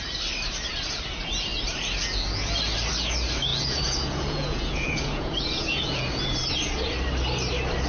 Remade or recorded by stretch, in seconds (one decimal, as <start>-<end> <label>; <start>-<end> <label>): 0.0-3.5 recorded; 3.5-6.3 remade; 6.3-7.9 recorded